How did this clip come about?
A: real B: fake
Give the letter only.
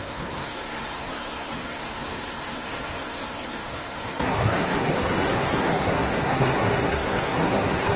B